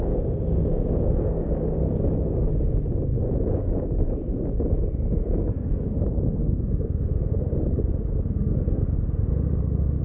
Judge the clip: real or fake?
fake